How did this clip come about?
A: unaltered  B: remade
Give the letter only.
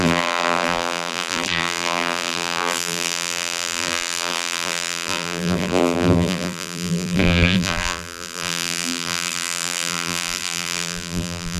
B